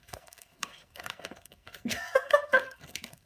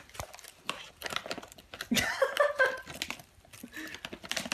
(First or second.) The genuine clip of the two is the second